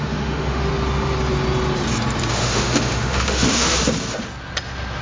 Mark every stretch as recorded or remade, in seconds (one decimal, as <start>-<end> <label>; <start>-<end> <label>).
0.0-0.7 remade; 0.7-2.3 recorded; 2.3-3.8 remade; 3.8-5.0 recorded